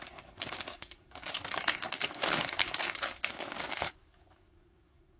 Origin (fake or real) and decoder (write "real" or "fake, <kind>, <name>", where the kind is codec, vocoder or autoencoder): fake, codec, DAC